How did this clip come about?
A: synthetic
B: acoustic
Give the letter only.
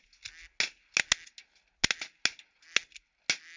B